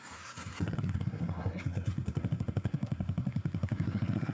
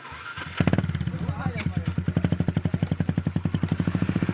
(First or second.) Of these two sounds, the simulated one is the first